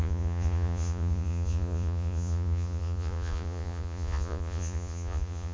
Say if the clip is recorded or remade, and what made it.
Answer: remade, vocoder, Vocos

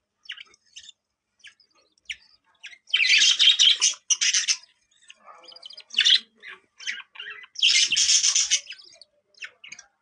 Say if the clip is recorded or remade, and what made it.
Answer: recorded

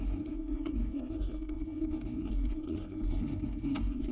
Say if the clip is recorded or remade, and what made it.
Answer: remade, codec, SNAC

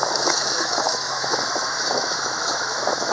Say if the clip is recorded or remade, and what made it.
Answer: remade, autoencoder, DAC-VAE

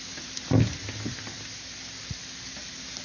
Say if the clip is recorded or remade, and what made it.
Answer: recorded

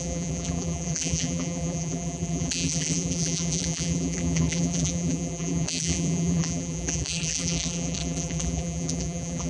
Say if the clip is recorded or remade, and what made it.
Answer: remade, vocoder, BigVGAN v2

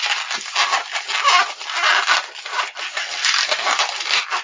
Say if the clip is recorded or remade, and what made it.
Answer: recorded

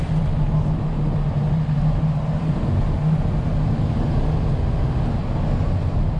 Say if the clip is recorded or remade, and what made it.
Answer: recorded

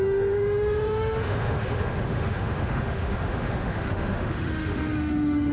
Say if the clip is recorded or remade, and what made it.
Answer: remade, autoencoder, DAC-VAE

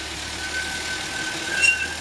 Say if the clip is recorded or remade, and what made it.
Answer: recorded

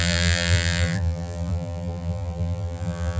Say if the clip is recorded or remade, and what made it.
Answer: remade, vocoder, BigVGAN v2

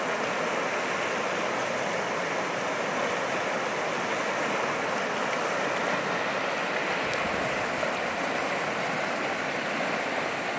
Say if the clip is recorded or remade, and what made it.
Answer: recorded